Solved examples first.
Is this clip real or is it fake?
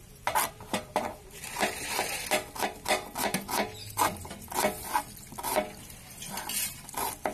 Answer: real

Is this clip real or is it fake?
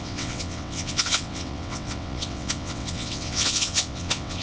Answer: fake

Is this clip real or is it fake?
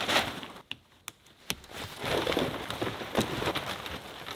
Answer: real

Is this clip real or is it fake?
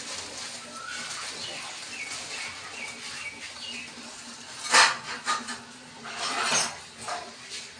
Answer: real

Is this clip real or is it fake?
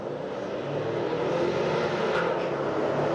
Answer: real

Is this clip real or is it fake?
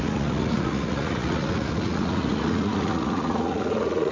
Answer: fake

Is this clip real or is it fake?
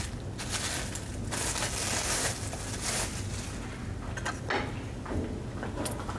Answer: real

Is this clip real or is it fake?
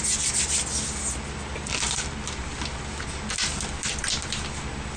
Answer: real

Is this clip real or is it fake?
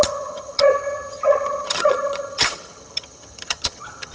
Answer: fake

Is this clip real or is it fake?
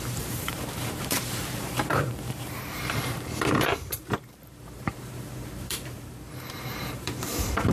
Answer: fake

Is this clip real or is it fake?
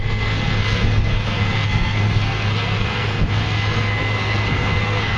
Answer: fake